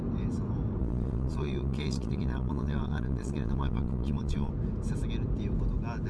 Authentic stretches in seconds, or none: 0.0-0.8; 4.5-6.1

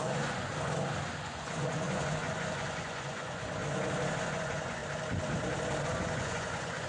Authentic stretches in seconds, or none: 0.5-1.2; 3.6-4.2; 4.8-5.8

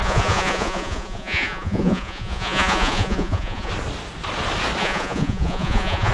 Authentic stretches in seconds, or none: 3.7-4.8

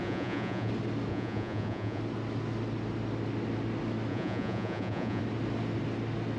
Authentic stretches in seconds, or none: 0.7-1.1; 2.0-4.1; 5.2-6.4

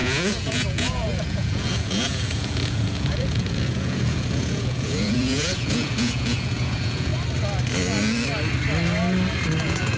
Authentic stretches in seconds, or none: 7.1-9.6

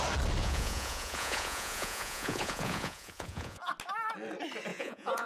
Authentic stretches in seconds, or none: 0.0-0.4; 3.6-4.7

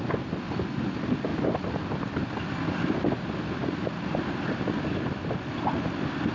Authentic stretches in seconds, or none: 0.0-6.3